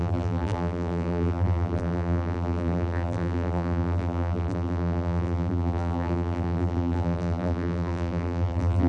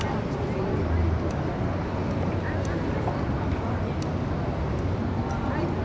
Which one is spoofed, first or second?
first